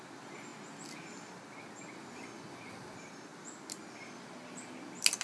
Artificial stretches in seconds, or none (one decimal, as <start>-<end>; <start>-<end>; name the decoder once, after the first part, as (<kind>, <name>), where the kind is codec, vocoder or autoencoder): none